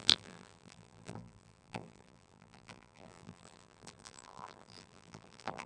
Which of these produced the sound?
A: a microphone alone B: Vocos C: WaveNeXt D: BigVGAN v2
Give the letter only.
D